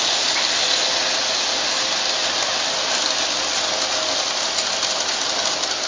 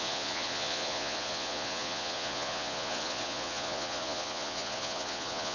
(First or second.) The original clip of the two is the first